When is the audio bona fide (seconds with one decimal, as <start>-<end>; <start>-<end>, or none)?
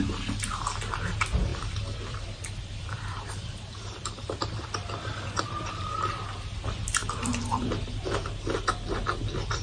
0.0-1.5; 6.4-7.0; 8.1-9.6